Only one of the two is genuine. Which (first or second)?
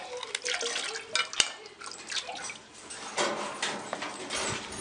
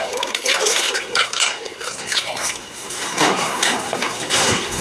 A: first